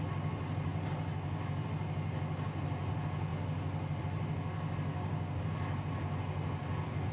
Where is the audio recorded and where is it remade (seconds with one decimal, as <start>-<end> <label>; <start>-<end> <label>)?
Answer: 0.0-4.9 recorded; 4.9-5.4 remade; 5.4-7.1 recorded